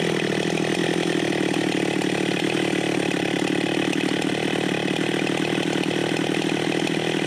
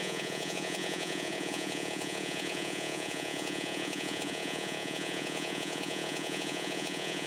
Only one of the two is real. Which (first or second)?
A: first